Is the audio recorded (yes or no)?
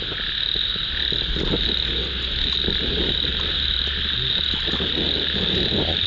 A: yes